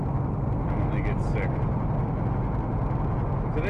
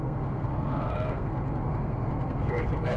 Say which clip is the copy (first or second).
second